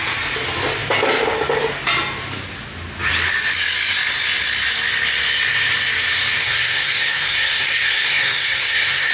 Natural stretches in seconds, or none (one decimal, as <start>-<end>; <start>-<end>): 0.0-6.4